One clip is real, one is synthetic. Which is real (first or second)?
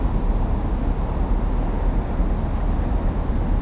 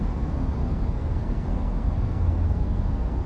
first